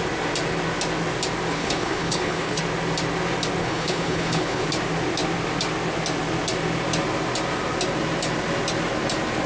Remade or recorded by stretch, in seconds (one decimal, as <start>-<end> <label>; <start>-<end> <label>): 0.0-1.5 recorded; 1.5-2.6 remade; 2.6-3.6 recorded; 3.6-4.7 remade; 4.7-9.5 recorded